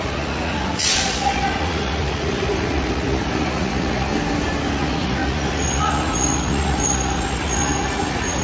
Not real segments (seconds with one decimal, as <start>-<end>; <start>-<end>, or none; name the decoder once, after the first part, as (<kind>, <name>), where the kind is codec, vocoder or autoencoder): 0.0-4.1 (vocoder, Vocos); 4.7-8.4